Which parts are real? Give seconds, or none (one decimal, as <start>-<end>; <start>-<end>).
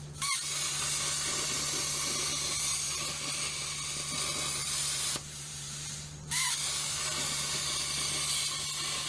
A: 0.0-4.6; 7.0-9.1